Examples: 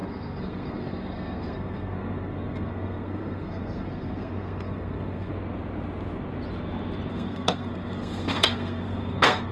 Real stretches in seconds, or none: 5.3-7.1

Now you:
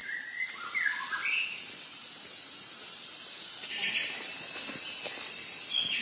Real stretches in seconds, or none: 0.0-6.0